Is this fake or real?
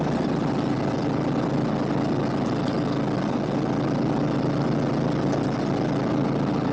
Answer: real